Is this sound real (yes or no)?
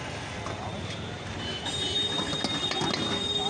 yes